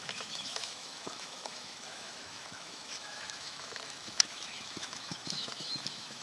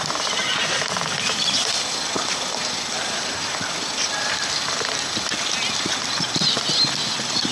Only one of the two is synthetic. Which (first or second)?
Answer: first